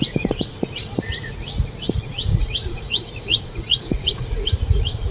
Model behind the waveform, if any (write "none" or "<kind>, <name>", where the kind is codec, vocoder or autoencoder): vocoder, Vocos